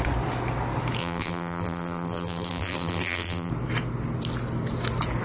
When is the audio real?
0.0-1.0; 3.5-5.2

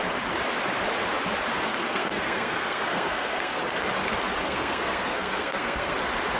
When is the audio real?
0.0-1.7; 3.8-4.4; 6.0-6.4

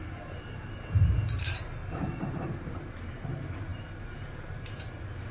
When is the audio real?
none